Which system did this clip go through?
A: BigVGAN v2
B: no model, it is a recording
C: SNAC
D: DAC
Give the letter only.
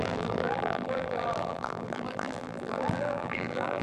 A